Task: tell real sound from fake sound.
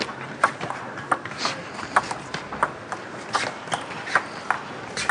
real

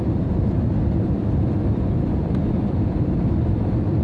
fake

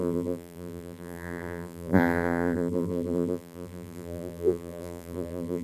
fake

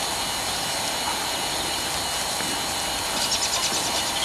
real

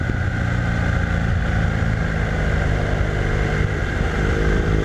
real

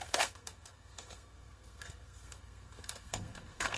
fake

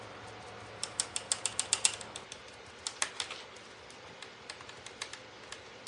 real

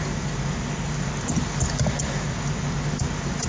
real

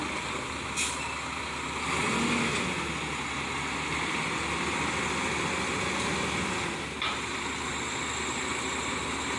real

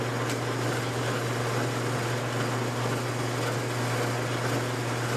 real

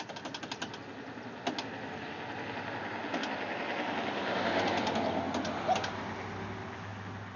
real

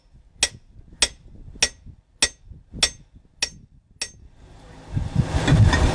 real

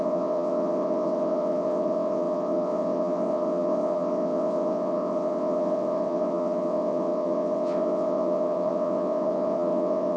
fake